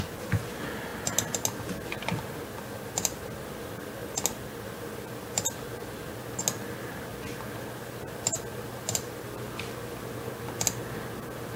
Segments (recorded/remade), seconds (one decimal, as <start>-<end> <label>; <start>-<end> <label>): 0.0-11.6 recorded